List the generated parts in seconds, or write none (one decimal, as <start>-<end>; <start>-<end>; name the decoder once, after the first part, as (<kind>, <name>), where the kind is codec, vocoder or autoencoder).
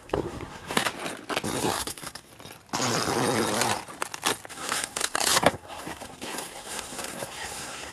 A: 0.0-0.9 (codec, SNAC); 1.6-2.3; 4.5-7.9